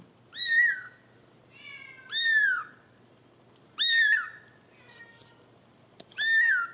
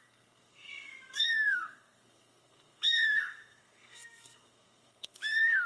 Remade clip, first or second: second